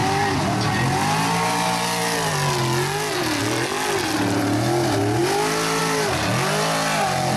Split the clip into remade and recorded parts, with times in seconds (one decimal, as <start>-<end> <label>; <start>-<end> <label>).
0.0-7.4 recorded